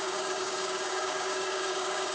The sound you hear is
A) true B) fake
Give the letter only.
B